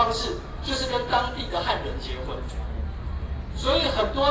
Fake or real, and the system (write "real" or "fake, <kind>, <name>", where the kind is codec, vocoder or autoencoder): real